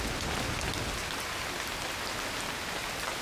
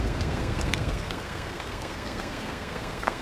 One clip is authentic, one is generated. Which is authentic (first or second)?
first